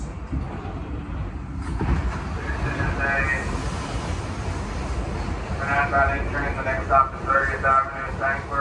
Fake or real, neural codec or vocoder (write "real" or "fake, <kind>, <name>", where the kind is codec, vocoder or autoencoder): real